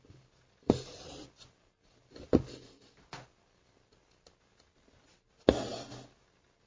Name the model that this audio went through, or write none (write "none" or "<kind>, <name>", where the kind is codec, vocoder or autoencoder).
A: none